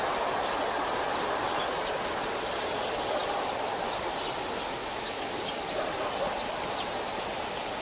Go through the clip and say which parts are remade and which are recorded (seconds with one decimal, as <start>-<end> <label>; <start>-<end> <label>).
0.0-4.8 recorded; 4.8-5.4 remade; 5.4-7.8 recorded